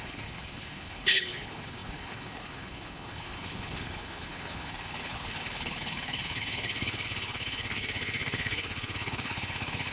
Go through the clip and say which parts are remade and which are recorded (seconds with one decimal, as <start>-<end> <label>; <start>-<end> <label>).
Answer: 0.0-9.9 remade